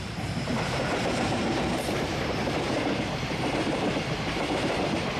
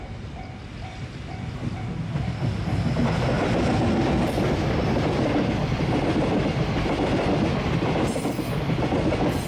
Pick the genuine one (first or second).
second